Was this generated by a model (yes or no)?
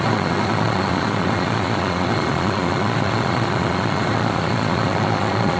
yes